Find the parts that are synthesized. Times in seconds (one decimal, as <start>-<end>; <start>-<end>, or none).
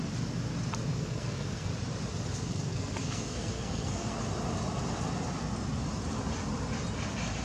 0.9-1.7; 2.3-4.2